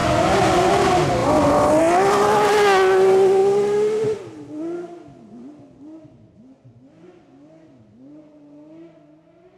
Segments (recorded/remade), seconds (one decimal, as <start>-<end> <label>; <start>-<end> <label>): 0.0-9.6 recorded